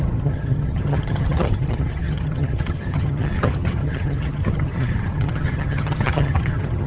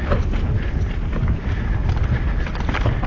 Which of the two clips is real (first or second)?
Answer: second